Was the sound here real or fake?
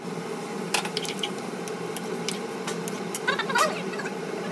real